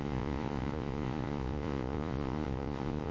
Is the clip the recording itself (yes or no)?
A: no